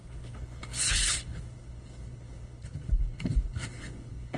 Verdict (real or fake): fake